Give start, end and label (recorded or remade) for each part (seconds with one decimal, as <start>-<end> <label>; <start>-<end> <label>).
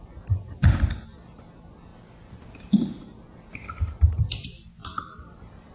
0.0-1.9 remade; 1.9-3.0 recorded; 3.0-5.7 remade